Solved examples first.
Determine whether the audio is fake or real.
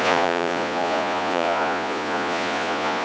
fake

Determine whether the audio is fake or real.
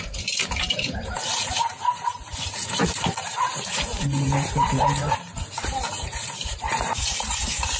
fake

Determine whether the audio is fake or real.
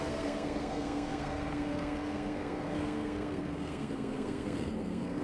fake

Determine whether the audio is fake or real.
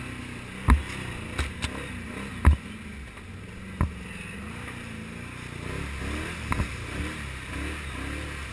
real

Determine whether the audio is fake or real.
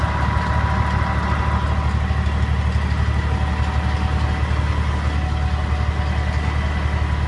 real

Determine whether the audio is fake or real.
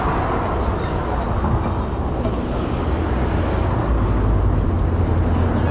real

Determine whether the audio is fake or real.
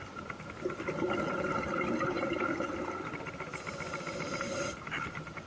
real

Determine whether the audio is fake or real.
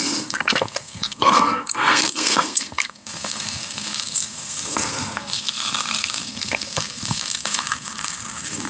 fake